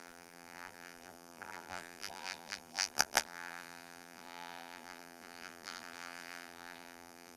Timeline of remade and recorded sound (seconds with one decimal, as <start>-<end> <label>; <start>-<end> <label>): 0.0-7.4 remade